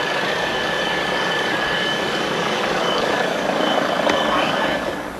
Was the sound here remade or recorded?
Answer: remade